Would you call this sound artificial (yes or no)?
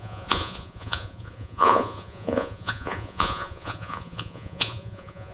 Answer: yes